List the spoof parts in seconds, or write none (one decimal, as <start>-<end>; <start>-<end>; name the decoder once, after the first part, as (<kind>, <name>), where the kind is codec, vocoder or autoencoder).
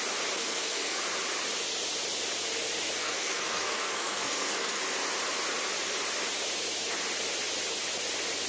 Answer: 0.4-1.0 (codec, SNAC); 3.0-4.8